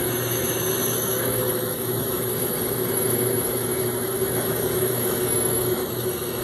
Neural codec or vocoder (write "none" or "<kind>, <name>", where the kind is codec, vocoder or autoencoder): autoencoder, DAC-VAE